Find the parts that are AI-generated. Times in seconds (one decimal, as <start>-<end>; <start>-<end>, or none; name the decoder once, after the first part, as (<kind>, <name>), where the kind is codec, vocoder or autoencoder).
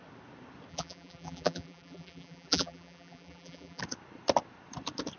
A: 0.7-3.8 (vocoder, BigVGAN v2)